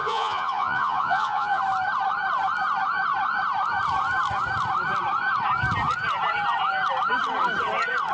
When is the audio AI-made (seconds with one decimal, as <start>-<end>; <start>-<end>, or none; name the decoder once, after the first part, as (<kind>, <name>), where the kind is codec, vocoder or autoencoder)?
0.0-1.6 (vocoder, Vocos)